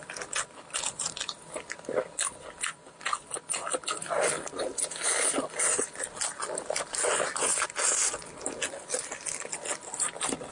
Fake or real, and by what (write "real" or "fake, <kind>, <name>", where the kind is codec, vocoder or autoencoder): real